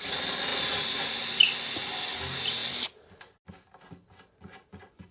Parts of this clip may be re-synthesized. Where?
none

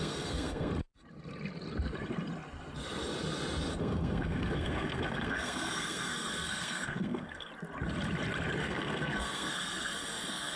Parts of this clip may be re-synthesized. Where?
0.0-0.7 (codec, SNAC); 3.8-7.5; 8.6-10.6

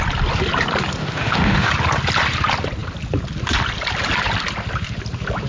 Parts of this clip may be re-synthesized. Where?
1.0-1.7 (autoencoder, DAC-VAE)

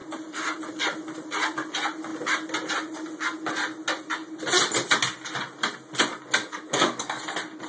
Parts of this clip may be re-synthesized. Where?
6.4-7.2 (codec, DAC)

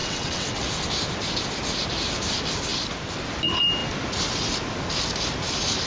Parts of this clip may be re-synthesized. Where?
0.0-0.7 (vocoder, WaveNeXt)

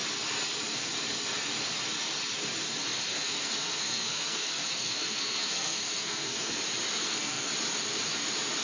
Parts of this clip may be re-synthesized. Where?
3.1-6.6 (codec, SNAC); 7.0-7.5

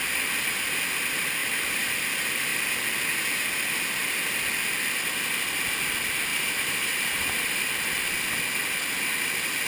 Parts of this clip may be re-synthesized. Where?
1.4-1.9 (vocoder, BigVGAN v2); 6.3-7.2